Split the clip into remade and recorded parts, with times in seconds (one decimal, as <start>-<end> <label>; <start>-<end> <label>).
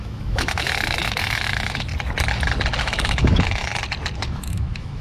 0.0-1.9 remade; 1.9-2.8 recorded; 2.8-3.7 remade; 3.7-4.2 recorded; 4.2-5.0 remade